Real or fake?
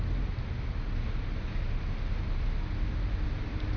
real